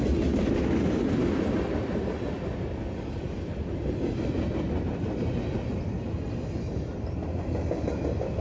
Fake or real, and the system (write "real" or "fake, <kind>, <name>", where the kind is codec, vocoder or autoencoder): real